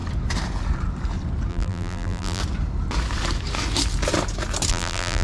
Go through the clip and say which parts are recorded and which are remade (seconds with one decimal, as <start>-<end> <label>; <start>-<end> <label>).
0.0-1.5 recorded; 1.5-2.4 remade; 2.4-4.7 recorded; 4.7-5.2 remade